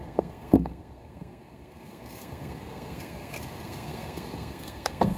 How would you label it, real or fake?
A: fake